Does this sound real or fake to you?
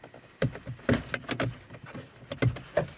real